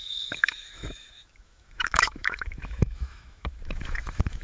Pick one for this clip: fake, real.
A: fake